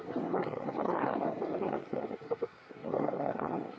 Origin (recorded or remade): remade